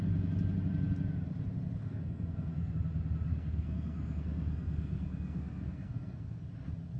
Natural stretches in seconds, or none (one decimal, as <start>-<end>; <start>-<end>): 0.0-1.8; 2.7-3.3; 6.4-7.0